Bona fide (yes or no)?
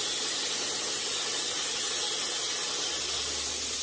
yes